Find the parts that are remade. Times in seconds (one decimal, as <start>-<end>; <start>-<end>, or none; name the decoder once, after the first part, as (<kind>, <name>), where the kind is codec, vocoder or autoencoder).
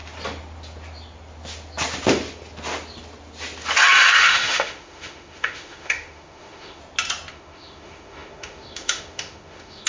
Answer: 4.2-6.8 (autoencoder, DAC-VAE); 7.3-9.9